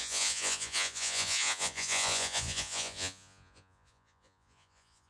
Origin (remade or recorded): remade